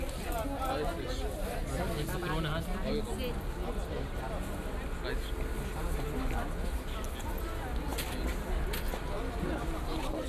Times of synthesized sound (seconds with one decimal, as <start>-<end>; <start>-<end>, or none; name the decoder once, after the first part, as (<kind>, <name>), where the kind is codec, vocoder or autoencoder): none

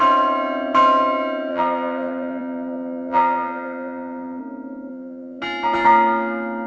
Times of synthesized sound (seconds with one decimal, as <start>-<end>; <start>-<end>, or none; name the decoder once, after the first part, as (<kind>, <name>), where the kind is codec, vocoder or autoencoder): 1.5-4.4 (vocoder, BigVGAN v2); 4.9-5.4

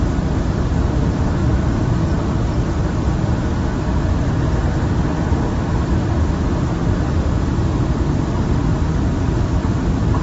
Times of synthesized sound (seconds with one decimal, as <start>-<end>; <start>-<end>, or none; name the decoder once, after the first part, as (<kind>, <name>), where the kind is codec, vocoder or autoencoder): 0.0-10.2 (vocoder, BigVGAN v2)

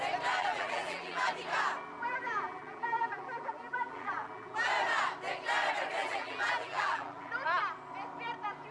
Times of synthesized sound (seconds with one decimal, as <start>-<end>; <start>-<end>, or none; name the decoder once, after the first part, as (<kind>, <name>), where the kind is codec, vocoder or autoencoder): 0.4-1.3 (vocoder, BigVGAN v2); 2.1-4.7; 6.0-7.3

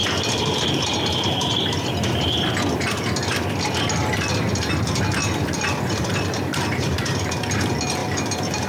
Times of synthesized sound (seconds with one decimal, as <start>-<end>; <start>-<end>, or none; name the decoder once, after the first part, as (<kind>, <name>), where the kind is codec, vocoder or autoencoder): 0.0-2.5 (vocoder, BigVGAN v2); 5.2-7.3; 8.0-8.7

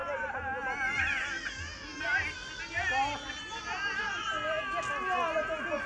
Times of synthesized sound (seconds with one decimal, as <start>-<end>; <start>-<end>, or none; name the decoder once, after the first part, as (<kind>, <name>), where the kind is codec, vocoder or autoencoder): 3.5-4.3 (vocoder, BigVGAN v2)

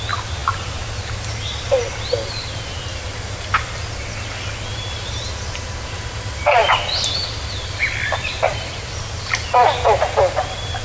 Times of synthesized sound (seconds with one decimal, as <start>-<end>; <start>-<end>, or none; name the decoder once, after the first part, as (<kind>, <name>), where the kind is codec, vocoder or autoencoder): 6.6-9.0 (vocoder, BigVGAN v2)

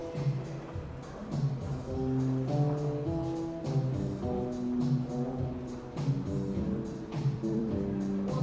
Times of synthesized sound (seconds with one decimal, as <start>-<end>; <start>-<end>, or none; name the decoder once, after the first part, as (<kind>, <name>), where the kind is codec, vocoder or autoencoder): 6.6-7.7 (vocoder, BigVGAN v2)